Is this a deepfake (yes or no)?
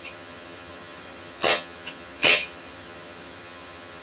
yes